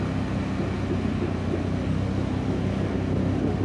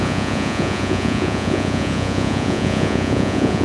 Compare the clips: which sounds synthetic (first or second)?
second